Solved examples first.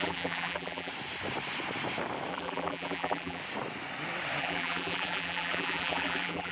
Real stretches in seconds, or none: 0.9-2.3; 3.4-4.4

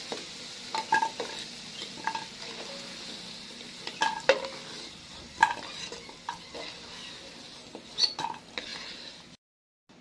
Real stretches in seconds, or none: 0.0-10.0

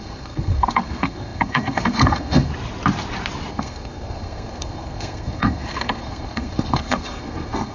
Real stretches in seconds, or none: 2.5-3.5

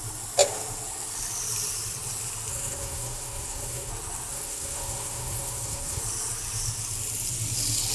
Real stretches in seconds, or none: 0.0-2.5; 3.9-4.3; 6.0-7.9

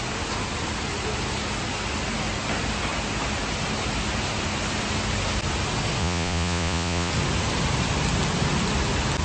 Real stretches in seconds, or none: 0.0-6.0; 7.1-9.2

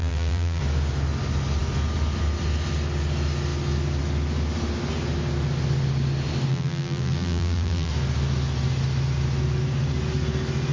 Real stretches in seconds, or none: 0.6-6.5; 7.9-10.7